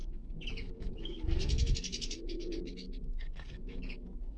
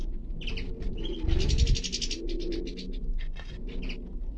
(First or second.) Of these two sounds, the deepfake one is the first